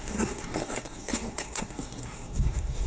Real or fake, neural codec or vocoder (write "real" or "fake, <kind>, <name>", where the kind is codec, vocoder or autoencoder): fake, codec, SNAC